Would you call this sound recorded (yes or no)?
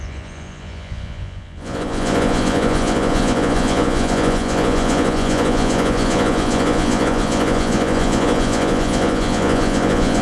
no